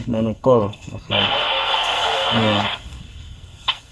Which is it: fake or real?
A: fake